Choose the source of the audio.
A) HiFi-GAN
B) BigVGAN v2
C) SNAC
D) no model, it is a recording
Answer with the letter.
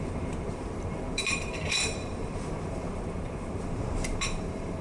B